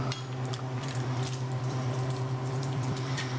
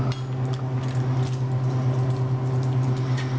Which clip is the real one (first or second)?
second